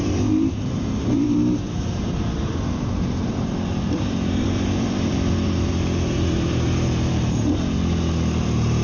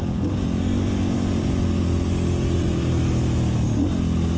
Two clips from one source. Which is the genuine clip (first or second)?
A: second